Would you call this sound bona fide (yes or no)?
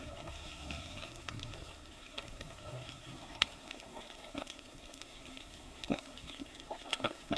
no